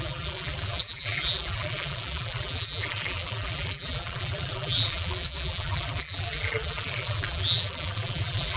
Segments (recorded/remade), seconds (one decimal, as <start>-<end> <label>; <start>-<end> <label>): 0.0-8.6 remade